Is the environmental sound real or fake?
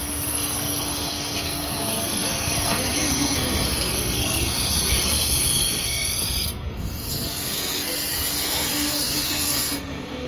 fake